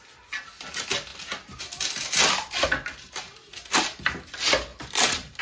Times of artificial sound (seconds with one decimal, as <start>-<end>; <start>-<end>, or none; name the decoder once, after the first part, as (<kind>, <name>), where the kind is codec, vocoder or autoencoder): none